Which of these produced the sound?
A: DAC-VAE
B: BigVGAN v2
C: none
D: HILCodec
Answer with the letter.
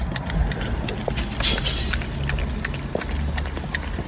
C